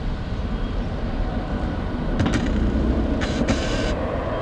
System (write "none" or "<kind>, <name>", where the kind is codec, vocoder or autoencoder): vocoder, BigVGAN v2